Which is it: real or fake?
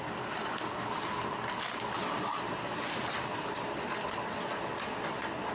real